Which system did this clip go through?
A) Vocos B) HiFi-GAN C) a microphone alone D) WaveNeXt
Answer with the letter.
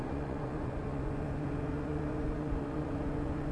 A